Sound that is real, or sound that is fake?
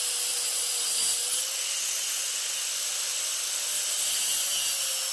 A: real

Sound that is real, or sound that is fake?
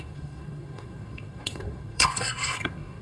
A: fake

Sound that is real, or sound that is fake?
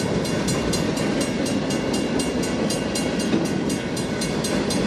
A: real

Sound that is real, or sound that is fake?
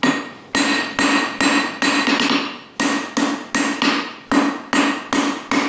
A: real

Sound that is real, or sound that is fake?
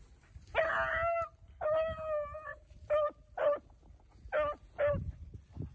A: real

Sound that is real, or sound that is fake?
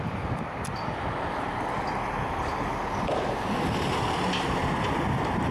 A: real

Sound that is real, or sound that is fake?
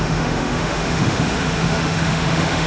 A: fake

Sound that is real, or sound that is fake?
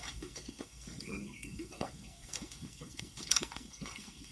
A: fake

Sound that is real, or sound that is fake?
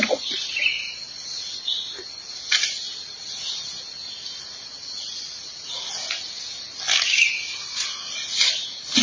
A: real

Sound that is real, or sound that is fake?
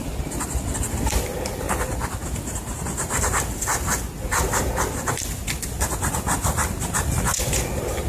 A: real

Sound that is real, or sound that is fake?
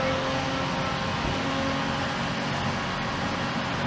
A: real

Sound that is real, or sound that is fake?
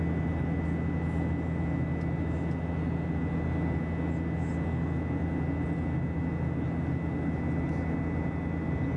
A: real